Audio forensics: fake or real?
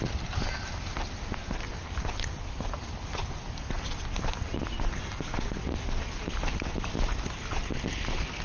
real